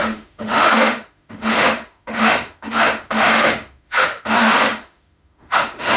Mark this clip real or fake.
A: fake